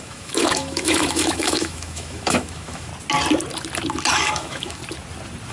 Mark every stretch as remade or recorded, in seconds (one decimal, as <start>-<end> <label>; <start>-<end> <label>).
0.0-2.9 remade; 2.9-4.1 recorded; 4.1-4.8 remade; 4.8-5.5 recorded